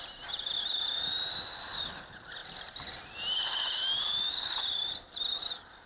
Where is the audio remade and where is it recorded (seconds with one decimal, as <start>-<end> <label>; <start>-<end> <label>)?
0.0-2.4 recorded; 2.4-5.9 remade